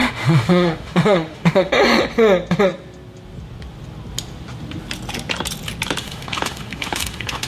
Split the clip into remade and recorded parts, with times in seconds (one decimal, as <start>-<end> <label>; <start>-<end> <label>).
0.0-1.7 remade; 1.7-6.0 recorded; 6.0-7.5 remade